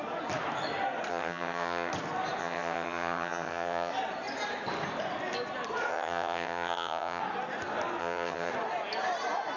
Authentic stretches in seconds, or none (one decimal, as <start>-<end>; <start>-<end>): 0.0-1.1; 1.9-2.4; 3.9-5.9; 7.2-8.0; 8.5-9.6